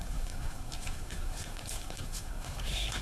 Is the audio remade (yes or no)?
yes